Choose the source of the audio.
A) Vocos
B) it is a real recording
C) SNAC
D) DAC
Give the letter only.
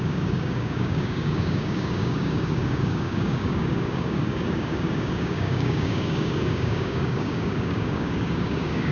D